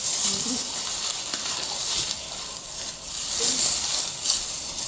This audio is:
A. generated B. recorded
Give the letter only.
B